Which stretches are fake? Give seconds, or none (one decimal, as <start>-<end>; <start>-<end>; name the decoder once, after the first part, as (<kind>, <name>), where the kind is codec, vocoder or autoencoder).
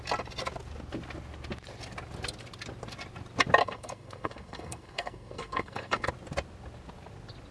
3.6-6.1 (codec, SNAC)